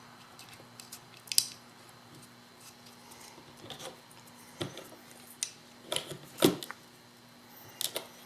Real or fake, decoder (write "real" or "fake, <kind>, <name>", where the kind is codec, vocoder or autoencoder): real